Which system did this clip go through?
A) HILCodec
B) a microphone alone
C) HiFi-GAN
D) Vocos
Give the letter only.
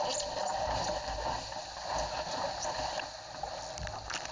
B